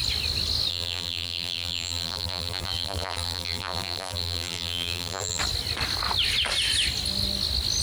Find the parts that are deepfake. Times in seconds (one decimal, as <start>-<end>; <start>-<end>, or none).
0.7-5.4